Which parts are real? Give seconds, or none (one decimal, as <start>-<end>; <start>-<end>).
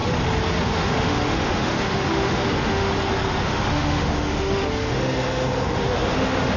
0.0-0.6; 2.9-3.4